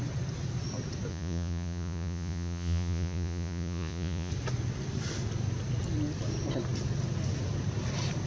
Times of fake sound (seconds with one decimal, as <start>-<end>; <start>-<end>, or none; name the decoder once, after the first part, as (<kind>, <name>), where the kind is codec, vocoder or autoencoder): 1.1-4.3 (vocoder, Vocos)